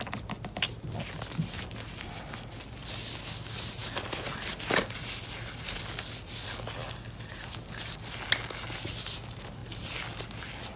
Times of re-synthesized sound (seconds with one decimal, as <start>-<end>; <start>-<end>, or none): none